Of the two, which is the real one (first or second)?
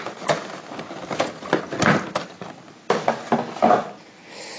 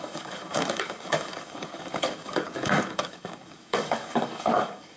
first